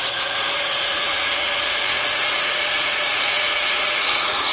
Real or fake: fake